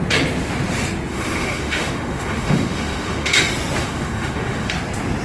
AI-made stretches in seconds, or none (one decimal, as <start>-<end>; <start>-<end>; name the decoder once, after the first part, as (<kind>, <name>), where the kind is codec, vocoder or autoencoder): 1.1-3.4 (autoencoder, DAC-VAE); 3.8-4.7